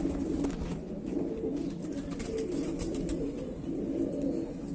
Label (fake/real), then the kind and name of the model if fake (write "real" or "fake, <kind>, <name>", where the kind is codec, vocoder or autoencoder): real